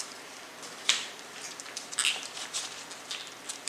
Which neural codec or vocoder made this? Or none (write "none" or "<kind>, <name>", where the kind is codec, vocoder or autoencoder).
vocoder, BigVGAN v2